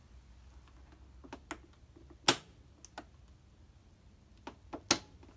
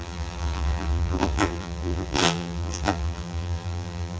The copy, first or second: second